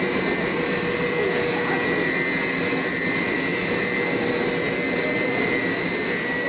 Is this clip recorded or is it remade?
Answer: recorded